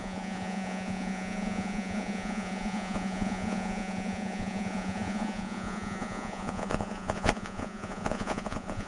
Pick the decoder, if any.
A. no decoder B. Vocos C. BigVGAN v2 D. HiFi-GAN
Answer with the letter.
B